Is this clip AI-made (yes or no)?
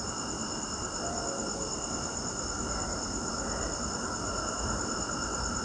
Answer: no